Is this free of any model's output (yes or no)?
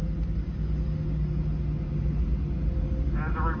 yes